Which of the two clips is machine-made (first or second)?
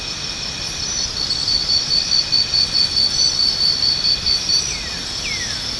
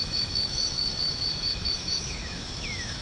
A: second